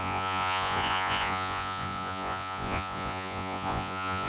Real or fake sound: fake